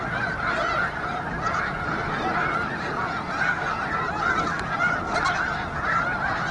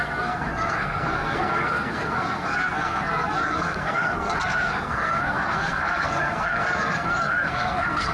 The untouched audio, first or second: first